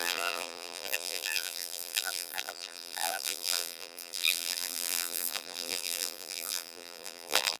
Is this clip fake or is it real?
fake